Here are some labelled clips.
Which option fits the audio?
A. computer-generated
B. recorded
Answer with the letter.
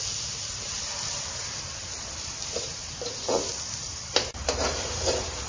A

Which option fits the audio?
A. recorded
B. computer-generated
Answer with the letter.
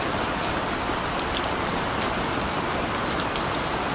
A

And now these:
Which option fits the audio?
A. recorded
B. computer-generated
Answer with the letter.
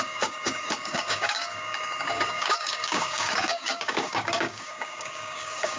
B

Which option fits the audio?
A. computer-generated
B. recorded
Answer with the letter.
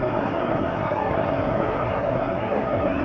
A